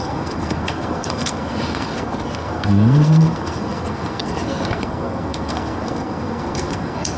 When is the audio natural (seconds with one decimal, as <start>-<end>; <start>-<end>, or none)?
none